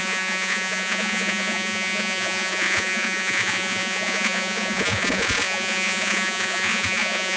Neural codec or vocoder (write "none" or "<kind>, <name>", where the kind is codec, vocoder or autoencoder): vocoder, Vocos